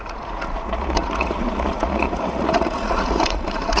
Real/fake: fake